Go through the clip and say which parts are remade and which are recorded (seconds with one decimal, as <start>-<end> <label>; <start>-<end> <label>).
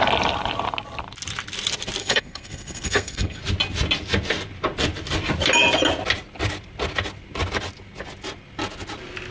0.0-2.0 recorded; 2.0-3.4 remade; 3.4-9.3 recorded